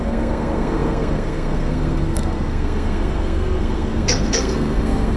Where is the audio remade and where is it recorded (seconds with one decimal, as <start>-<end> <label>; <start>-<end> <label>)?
0.0-5.2 remade